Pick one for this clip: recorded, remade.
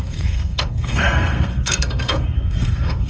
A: remade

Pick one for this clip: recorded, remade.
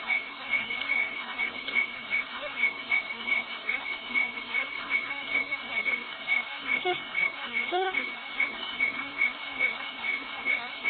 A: remade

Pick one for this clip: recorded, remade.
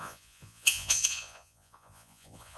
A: remade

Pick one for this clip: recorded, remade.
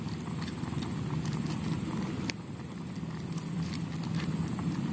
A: recorded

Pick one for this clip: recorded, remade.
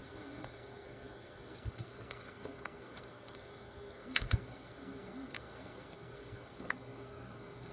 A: remade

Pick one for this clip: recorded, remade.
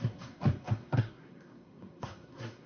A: remade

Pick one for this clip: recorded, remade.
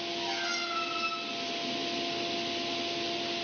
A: recorded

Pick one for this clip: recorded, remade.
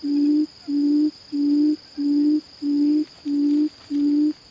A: recorded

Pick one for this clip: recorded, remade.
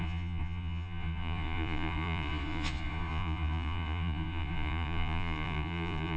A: remade